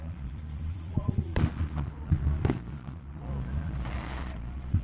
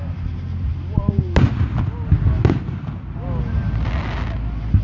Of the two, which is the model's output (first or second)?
first